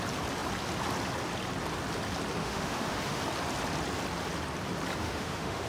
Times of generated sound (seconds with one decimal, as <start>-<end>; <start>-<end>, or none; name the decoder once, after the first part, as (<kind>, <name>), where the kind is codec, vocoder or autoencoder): 2.4-3.2 (autoencoder, DAC-VAE); 5.0-5.7

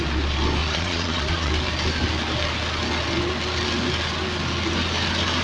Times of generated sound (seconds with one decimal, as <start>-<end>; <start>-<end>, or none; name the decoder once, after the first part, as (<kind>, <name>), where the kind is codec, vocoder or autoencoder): 0.6-1.5 (vocoder, Vocos)

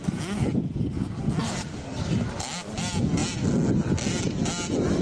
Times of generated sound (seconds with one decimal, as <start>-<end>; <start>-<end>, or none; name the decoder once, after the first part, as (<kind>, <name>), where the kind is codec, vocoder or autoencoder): none

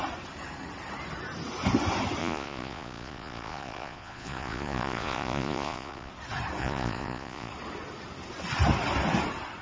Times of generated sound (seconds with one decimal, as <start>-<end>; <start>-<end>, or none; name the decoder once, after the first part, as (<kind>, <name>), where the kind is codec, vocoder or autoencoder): 2.2-6.1 (vocoder, Vocos); 6.6-7.5

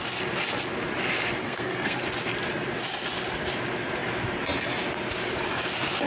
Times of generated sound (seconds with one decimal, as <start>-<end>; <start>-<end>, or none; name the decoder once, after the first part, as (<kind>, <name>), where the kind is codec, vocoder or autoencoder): 1.4-2.0 (codec, SNAC)

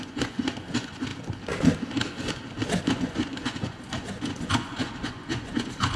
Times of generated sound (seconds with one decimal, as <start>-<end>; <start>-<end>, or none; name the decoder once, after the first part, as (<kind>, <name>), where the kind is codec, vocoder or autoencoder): 0.0-1.1 (vocoder, Vocos); 2.8-6.0